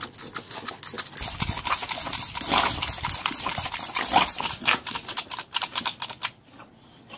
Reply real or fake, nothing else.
real